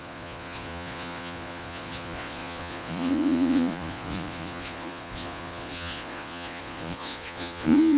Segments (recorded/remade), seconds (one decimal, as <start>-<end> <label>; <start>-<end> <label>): 0.0-8.0 remade

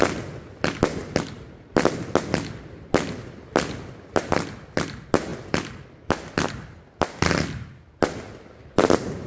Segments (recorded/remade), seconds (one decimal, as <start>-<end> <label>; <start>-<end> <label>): 0.0-9.3 recorded

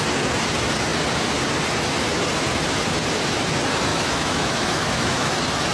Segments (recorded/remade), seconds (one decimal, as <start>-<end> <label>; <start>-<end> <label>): 0.0-3.9 recorded; 3.9-5.3 remade; 5.3-5.7 recorded

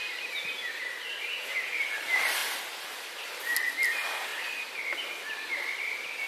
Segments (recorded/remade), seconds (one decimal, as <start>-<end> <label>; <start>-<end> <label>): 0.0-6.3 recorded

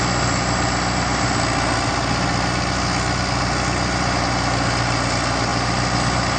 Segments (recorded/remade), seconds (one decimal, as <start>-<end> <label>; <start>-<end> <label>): 0.0-6.4 recorded

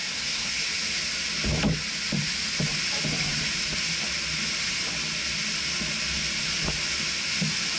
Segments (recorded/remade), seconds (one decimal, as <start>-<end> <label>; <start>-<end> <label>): 0.0-0.6 remade; 0.6-7.8 recorded